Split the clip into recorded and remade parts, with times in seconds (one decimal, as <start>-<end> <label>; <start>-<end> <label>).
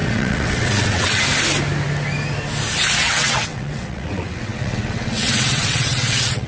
0.0-1.2 remade; 1.2-3.0 recorded; 3.0-6.5 remade